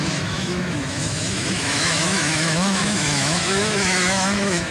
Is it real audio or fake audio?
fake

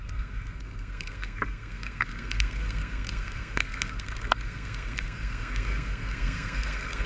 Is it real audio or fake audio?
fake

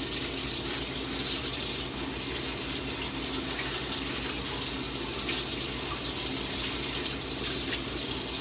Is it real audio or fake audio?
real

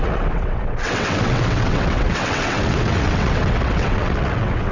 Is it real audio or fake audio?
fake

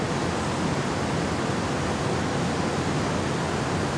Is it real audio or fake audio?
real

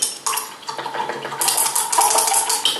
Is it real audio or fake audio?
real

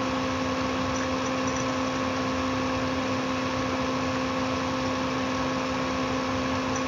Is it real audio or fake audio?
real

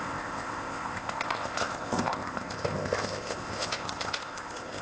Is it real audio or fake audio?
fake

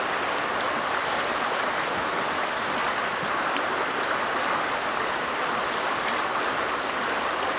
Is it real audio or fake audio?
real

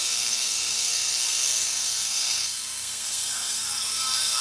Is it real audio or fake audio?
fake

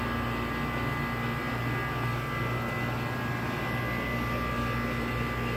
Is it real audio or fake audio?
real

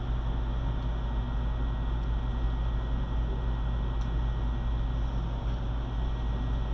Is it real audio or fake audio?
real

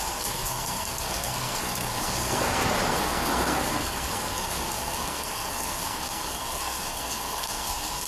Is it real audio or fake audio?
fake